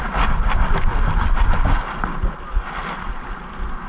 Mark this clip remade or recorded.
recorded